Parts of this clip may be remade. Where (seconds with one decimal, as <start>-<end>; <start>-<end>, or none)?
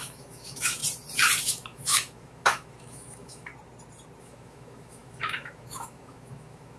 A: 0.0-0.8; 1.4-3.5; 4.2-6.8